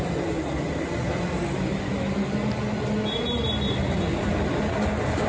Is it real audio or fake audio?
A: real